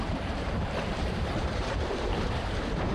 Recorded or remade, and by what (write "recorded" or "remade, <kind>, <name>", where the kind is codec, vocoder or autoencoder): remade, vocoder, BigVGAN v2